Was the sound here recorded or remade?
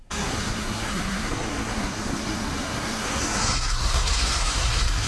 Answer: remade